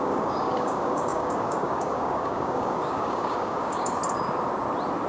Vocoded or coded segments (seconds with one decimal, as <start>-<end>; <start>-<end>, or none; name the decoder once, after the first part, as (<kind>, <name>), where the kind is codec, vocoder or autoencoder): 0.0-4.0 (codec, DAC)